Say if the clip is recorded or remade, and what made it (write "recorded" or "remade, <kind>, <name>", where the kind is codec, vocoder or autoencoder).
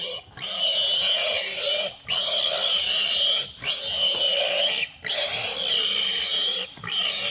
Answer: recorded